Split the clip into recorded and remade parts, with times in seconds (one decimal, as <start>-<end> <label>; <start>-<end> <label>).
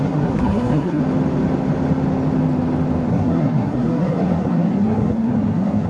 0.0-1.0 remade; 1.0-3.1 recorded; 3.1-5.9 remade